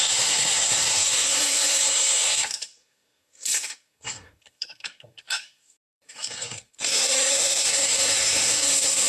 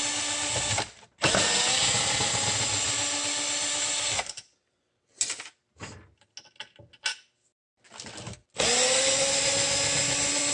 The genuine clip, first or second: second